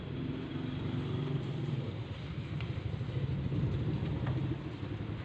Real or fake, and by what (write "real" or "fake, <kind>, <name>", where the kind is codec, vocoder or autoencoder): fake, vocoder, BigVGAN v2